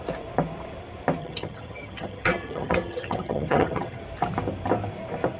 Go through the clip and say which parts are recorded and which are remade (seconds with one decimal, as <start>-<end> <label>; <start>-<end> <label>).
0.0-1.2 recorded; 1.2-4.0 remade; 4.0-5.4 recorded